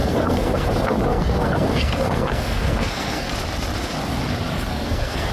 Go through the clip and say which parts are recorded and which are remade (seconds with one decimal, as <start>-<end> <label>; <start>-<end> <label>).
0.0-0.7 remade; 0.7-1.1 recorded; 1.1-3.3 remade; 3.3-4.7 recorded; 4.7-5.3 remade